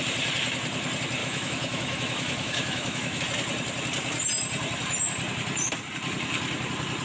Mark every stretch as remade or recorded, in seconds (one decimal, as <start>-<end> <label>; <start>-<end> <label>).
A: 0.0-1.2 recorded; 1.2-3.2 remade; 3.2-7.0 recorded